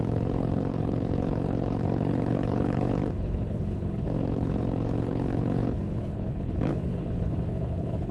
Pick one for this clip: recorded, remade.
remade